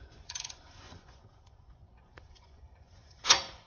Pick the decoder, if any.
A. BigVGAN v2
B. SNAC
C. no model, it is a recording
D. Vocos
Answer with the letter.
D